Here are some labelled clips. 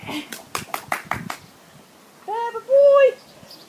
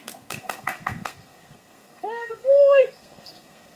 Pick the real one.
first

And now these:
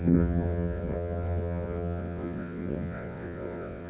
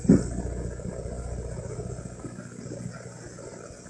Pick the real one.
second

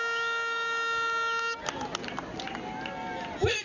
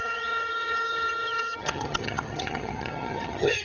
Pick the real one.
first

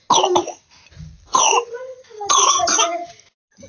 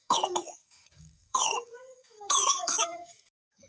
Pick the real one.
first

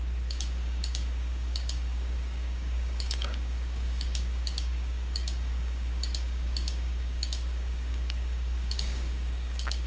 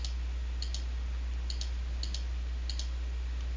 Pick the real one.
second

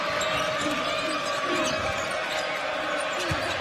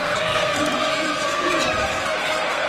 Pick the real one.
first